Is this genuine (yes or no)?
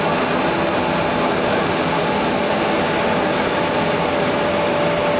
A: yes